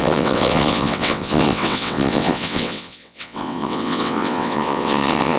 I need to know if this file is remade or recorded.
remade